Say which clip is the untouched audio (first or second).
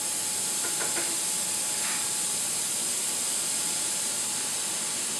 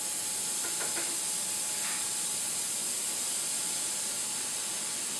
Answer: second